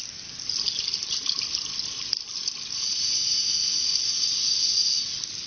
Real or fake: real